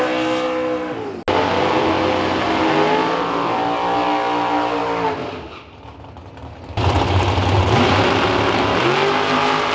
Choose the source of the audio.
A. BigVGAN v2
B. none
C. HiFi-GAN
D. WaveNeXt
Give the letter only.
B